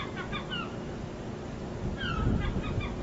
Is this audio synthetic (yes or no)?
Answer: no